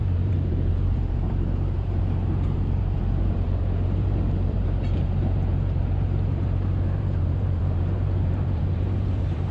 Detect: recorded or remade remade